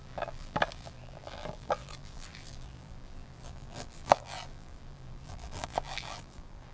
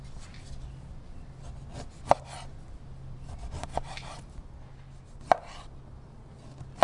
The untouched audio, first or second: second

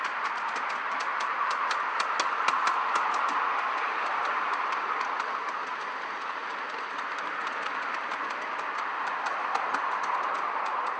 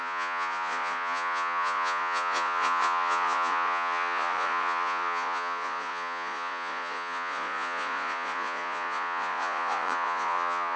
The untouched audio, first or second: first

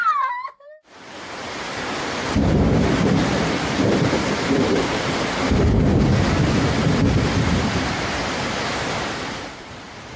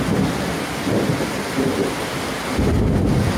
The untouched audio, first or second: second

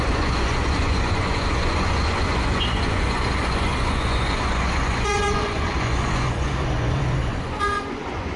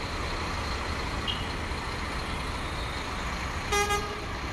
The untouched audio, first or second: second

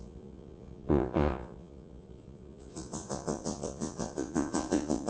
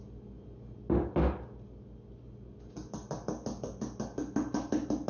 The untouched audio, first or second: second